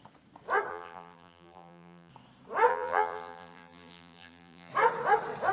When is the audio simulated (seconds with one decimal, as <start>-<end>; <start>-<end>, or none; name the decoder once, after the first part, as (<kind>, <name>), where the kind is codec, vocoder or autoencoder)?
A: 0.7-2.1 (vocoder, BigVGAN v2); 2.7-4.7